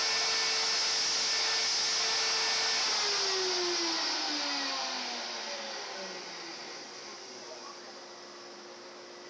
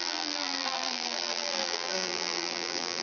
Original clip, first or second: first